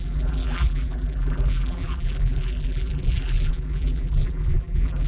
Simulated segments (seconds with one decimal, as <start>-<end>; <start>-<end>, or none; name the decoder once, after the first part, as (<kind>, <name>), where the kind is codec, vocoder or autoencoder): 0.0-5.1 (vocoder, BigVGAN v2)